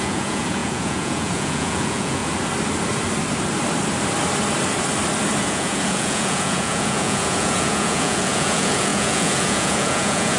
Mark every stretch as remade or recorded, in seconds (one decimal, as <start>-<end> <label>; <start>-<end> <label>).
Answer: 0.0-2.2 remade; 2.2-5.4 recorded; 5.4-10.4 remade